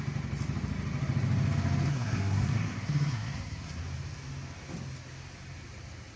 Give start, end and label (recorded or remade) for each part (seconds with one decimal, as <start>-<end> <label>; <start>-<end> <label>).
0.0-1.9 recorded; 1.9-3.8 remade; 3.8-6.2 recorded